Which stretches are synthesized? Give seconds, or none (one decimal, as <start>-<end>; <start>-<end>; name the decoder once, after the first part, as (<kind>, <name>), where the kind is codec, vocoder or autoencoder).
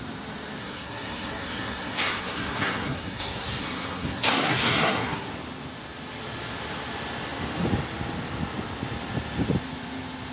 0.6-5.3 (codec, SNAC)